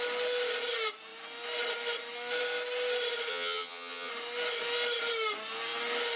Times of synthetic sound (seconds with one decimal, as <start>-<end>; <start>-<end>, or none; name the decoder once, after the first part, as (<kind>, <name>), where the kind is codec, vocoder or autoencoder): 3.3-4.1 (vocoder, HiFi-GAN)